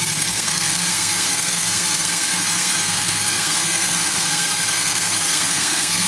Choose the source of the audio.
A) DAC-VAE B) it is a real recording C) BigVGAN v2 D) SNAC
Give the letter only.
D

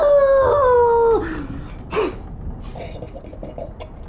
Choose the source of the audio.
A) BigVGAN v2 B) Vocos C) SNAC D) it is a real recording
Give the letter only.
D